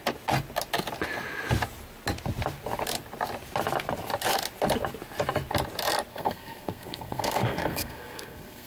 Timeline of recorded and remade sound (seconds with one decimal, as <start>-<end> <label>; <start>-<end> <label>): 0.0-6.1 recorded; 6.1-8.7 remade